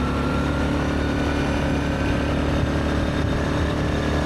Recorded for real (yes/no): yes